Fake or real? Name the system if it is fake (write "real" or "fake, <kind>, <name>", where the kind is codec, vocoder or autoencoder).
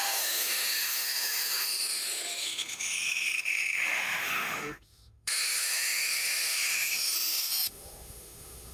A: fake, autoencoder, DAC-VAE